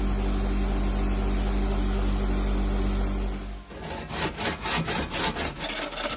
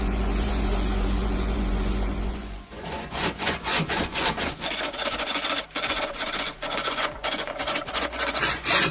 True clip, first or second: first